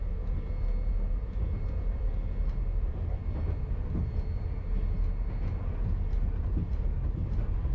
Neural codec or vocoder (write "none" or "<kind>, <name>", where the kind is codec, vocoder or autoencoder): none